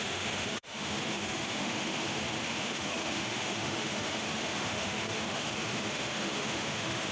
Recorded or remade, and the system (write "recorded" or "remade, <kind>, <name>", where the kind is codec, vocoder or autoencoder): remade, autoencoder, DAC-VAE